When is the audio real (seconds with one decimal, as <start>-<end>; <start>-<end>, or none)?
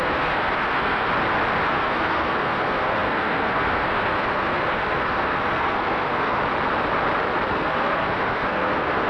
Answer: 1.1-1.7; 6.4-7.5